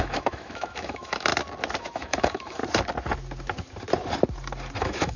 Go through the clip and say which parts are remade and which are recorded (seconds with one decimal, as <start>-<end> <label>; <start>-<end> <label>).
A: 0.0-1.3 remade; 1.3-1.8 recorded; 1.8-2.6 remade; 2.6-4.8 recorded; 4.8-5.2 remade